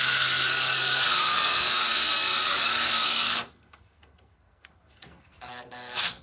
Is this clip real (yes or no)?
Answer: no